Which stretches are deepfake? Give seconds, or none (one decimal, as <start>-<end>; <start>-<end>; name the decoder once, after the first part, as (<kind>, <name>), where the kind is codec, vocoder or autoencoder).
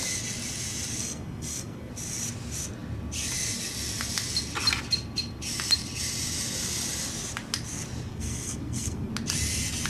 1.0-1.9 (codec, SNAC); 8.1-9.1